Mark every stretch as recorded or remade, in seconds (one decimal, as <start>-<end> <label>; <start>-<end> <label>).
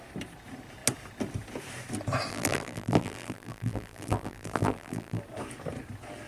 0.0-2.3 recorded; 2.3-5.2 remade; 5.2-6.3 recorded